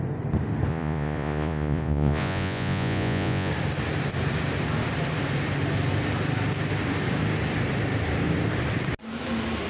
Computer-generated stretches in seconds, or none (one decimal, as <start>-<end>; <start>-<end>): 0.7-3.5

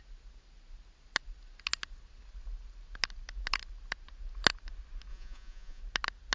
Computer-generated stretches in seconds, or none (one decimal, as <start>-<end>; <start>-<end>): 5.1-5.8